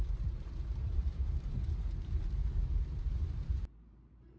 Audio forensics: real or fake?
fake